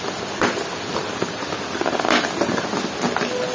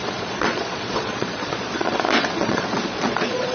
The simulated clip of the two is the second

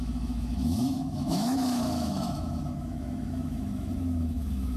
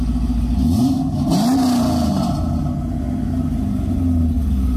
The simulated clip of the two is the first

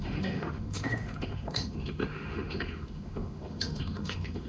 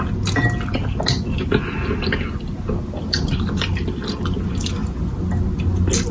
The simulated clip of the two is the first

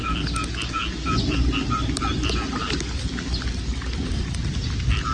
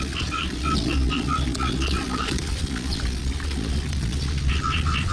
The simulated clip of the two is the second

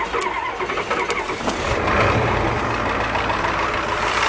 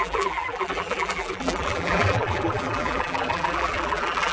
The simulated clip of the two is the second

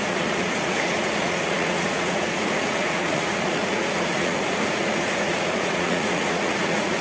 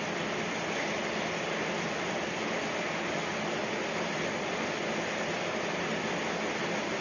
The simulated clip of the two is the first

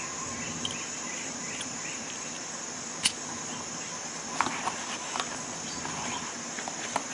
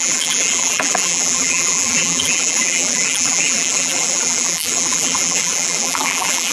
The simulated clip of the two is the second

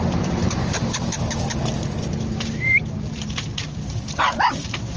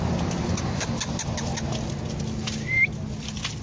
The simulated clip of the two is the first